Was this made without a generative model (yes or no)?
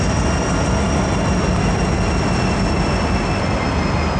yes